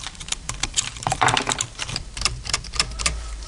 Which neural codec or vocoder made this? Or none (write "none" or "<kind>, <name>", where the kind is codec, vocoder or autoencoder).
vocoder, BigVGAN v2